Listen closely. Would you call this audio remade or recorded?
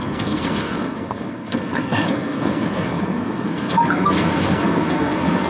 remade